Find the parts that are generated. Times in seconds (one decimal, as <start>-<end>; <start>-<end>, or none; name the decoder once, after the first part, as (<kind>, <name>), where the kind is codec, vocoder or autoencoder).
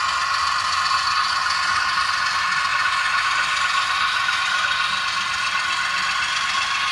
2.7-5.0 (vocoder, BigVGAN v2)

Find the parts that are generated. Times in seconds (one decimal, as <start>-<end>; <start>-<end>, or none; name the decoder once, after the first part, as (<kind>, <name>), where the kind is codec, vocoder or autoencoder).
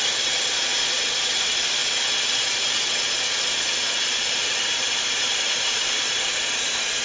0.0-1.8 (vocoder, BigVGAN v2); 4.3-7.0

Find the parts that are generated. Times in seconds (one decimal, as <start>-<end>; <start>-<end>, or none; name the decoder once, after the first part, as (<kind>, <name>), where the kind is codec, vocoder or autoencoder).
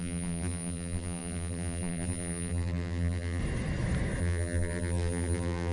0.0-3.4 (vocoder, BigVGAN v2); 4.2-5.7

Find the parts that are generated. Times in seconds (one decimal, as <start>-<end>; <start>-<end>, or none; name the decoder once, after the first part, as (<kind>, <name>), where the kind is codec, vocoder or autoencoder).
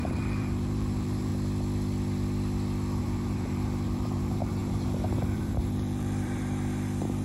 0.0-1.3 (vocoder, BigVGAN v2); 3.0-7.2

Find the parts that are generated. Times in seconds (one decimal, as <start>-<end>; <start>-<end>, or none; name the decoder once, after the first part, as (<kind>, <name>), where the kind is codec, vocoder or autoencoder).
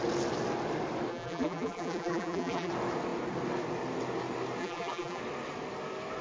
1.1-2.7 (vocoder, BigVGAN v2); 4.6-5.2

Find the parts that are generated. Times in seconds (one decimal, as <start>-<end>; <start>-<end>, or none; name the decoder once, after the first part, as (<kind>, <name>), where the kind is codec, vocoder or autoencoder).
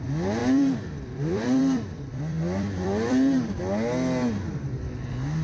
0.4-3.6 (vocoder, BigVGAN v2)